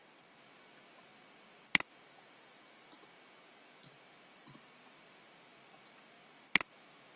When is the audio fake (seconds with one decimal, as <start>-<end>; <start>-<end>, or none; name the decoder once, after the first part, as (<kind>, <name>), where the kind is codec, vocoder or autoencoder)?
none

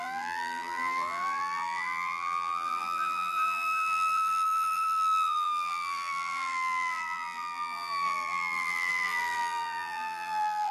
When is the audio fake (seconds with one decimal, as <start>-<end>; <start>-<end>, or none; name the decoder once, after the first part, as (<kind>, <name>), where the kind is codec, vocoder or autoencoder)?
0.0-10.7 (vocoder, BigVGAN v2)

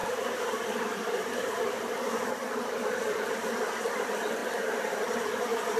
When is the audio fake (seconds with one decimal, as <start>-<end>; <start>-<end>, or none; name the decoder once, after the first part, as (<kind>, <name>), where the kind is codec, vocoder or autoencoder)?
0.0-3.3 (vocoder, BigVGAN v2)

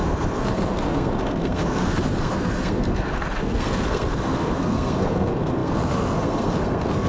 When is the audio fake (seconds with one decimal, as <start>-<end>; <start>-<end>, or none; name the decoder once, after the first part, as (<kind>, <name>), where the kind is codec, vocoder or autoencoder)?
0.0-7.1 (codec, SNAC)

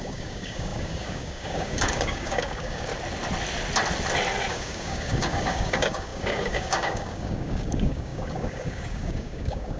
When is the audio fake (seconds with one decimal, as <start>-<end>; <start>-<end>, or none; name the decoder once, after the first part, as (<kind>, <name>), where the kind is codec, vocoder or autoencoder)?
0.0-2.9 (codec, DAC); 4.5-9.8

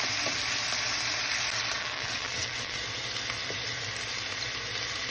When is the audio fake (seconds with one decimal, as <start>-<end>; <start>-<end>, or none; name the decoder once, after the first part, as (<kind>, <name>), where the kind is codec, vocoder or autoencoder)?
1.8-2.8 (vocoder, WaveNeXt)

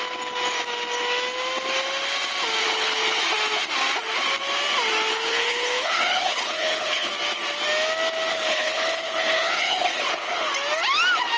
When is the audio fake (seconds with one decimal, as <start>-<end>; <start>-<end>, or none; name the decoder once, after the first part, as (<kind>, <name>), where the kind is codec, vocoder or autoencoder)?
2.6-3.2 (codec, HILCodec); 5.1-7.1; 8.3-10.5